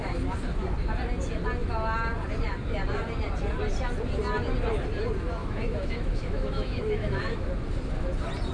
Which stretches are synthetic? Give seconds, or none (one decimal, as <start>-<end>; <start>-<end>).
5.4-7.5